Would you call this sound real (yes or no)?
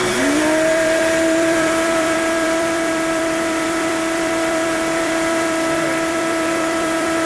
no